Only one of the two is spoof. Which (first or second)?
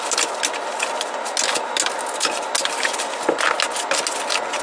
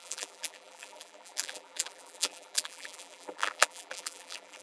second